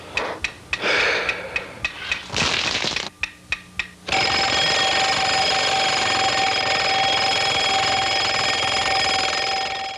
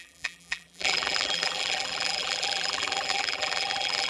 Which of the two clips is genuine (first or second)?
first